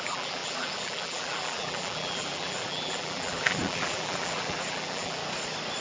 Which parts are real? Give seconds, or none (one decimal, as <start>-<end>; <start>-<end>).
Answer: 5.2-5.8